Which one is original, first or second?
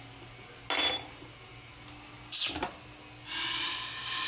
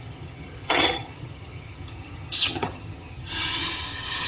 first